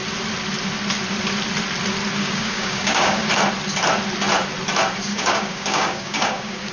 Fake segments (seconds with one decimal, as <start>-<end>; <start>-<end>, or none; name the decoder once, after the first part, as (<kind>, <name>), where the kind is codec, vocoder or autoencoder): 2.2-3.3 (codec, DAC); 5.1-6.7